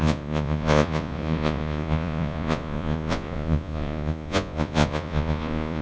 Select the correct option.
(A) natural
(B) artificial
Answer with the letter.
B